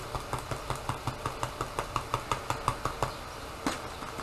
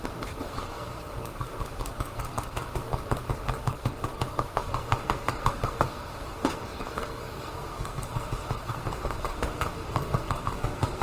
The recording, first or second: first